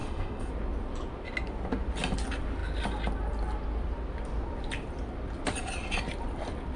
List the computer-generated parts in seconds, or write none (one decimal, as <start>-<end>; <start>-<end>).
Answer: 0.0-0.5